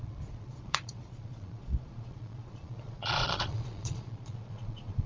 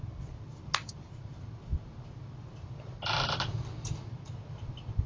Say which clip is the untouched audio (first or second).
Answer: second